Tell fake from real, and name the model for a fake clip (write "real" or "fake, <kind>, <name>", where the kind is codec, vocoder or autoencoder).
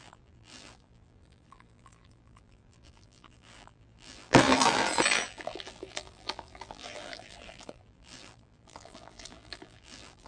fake, vocoder, BigVGAN v2